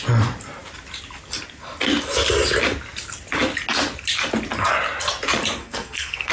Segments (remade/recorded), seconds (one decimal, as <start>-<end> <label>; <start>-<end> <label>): 0.0-5.6 recorded; 5.6-6.3 remade